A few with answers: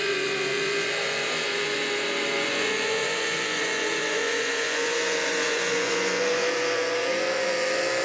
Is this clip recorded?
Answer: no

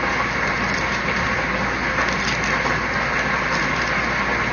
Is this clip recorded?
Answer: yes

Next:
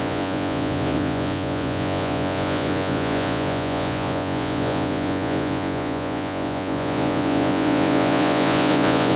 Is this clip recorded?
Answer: no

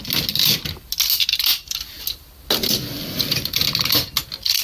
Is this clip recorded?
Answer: yes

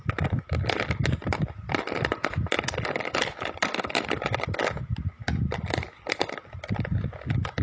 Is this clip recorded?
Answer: yes